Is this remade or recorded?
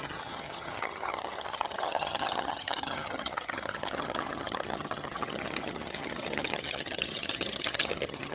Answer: remade